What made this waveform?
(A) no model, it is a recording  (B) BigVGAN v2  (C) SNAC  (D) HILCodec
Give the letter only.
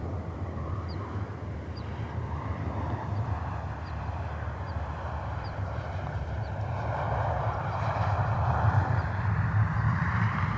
B